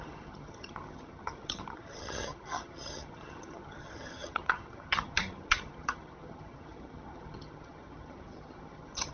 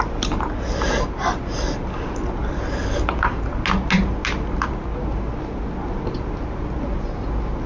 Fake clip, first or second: first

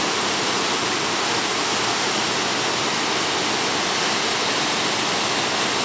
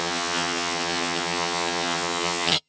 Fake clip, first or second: second